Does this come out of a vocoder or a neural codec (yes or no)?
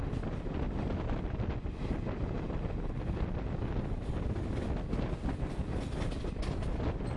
no